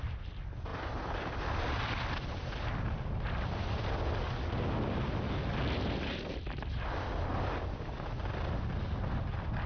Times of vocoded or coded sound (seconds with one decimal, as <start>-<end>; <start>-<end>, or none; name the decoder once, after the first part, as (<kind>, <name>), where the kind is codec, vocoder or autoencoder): none